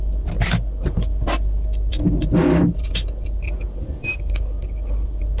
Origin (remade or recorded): recorded